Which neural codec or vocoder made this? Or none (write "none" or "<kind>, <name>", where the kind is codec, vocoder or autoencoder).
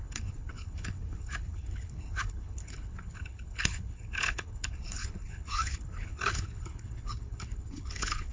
codec, HILCodec